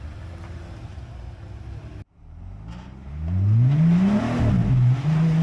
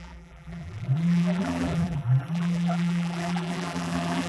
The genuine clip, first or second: first